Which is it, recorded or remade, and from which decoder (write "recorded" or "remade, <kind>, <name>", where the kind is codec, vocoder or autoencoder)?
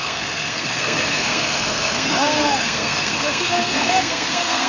remade, codec, SNAC